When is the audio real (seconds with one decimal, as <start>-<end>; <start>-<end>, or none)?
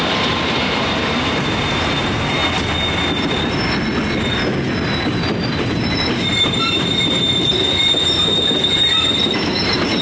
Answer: 2.4-4.9